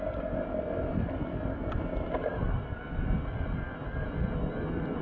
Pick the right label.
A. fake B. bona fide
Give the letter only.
B